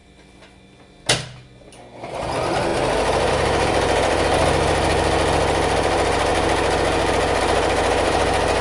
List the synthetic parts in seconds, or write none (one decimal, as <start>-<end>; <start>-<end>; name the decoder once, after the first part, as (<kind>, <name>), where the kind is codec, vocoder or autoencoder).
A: 1.7-2.7 (vocoder, BigVGAN v2); 3.3-6.3; 7.4-8.6